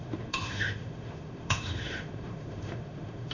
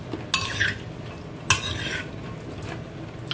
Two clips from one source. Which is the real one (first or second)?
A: second